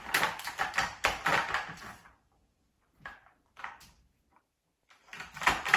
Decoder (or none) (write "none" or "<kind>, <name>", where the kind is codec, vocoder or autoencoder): none